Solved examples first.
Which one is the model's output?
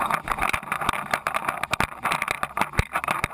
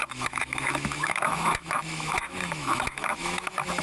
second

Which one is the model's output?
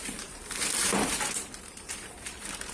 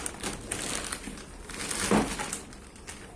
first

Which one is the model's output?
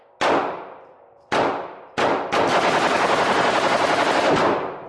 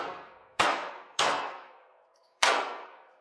second